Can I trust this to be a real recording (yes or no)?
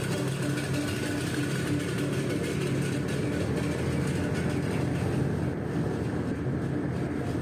yes